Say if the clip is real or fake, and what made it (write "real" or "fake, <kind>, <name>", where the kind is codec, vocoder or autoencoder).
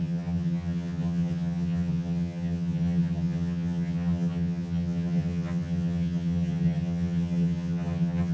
fake, vocoder, HiFi-GAN